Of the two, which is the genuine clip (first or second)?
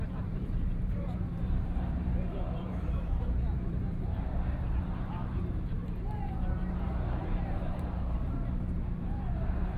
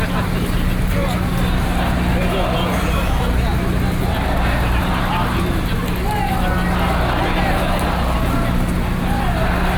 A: second